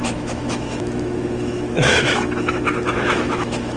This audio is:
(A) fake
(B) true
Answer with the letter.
A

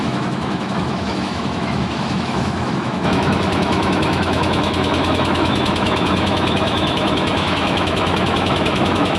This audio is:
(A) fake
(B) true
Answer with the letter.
A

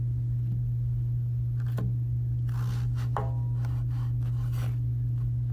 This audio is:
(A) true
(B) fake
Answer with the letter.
A